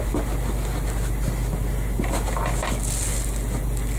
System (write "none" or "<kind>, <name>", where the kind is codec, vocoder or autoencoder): none